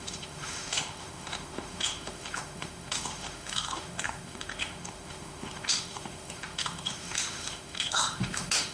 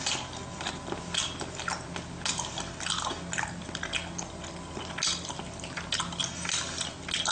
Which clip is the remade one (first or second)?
first